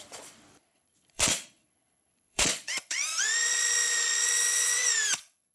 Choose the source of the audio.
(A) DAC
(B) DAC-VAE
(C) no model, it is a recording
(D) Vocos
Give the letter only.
D